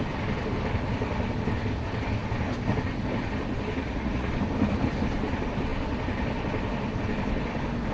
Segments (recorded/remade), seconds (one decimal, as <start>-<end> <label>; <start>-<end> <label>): 0.0-3.8 recorded; 3.8-4.3 remade; 4.3-7.9 recorded